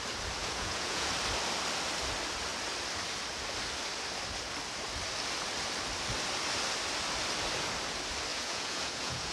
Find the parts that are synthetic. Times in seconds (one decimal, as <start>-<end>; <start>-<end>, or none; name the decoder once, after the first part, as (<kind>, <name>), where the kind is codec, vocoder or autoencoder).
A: 0.4-1.1 (vocoder, Vocos); 8.3-9.3